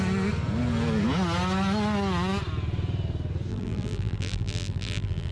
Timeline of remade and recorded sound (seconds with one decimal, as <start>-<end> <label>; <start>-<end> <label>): 0.0-3.5 recorded; 3.5-5.3 remade